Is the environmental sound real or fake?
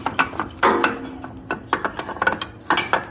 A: real